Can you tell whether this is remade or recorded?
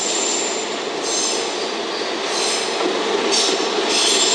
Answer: recorded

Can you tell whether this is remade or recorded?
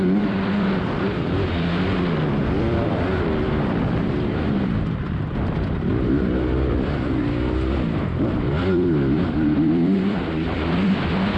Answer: remade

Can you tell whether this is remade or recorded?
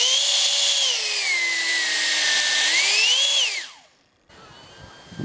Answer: recorded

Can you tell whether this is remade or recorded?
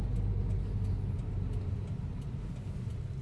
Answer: recorded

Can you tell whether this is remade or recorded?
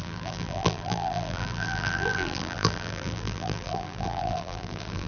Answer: remade